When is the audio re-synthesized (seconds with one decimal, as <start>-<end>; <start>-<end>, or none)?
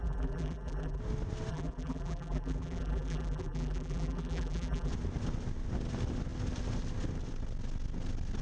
0.0-1.0; 1.5-4.9